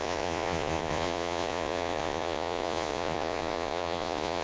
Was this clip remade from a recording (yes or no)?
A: yes